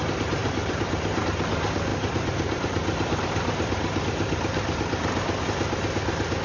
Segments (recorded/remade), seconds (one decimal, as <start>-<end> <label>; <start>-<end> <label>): 0.0-0.4 recorded; 0.4-1.2 remade; 1.2-1.9 recorded; 1.9-5.4 remade; 5.4-6.4 recorded